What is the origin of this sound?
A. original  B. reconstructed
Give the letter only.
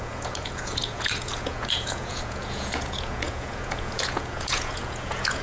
B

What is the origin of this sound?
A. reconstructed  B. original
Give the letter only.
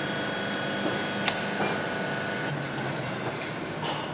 B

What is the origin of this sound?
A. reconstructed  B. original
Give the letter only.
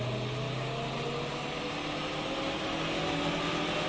B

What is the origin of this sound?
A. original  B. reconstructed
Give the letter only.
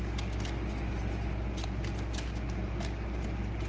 A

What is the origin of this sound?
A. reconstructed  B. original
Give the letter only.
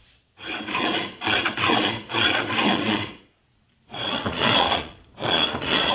A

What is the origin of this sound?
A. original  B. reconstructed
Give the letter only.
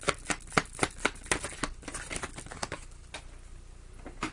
A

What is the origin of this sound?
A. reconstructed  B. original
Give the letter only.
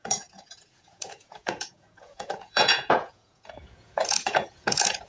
A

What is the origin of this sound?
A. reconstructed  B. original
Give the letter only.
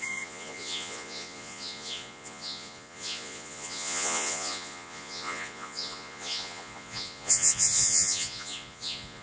A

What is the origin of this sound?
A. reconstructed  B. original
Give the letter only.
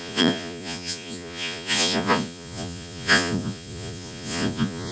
A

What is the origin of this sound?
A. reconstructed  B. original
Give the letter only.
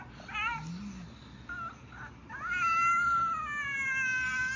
B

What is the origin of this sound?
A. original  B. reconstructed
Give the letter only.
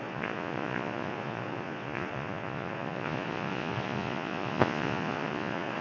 B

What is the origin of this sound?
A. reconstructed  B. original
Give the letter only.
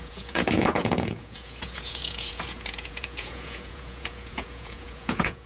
A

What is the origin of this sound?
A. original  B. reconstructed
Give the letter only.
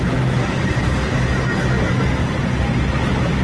A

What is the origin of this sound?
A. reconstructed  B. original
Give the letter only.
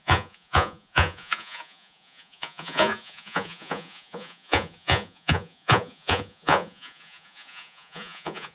A